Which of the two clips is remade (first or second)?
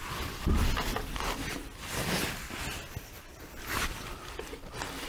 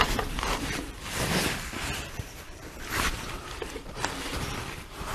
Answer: second